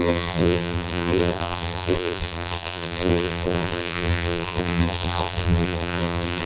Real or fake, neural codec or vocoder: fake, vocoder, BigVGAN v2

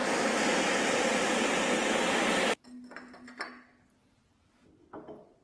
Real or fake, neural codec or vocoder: real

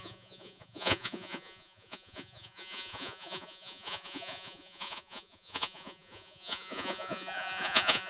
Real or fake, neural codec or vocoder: fake, vocoder, Vocos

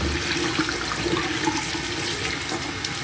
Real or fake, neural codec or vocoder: real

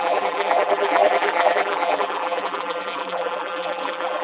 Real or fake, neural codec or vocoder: fake, vocoder, BigVGAN v2